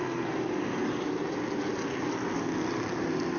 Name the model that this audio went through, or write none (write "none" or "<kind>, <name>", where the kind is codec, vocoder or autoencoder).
none